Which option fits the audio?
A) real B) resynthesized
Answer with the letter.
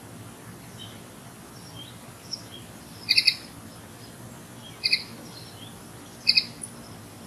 B